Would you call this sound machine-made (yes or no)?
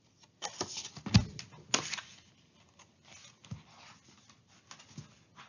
no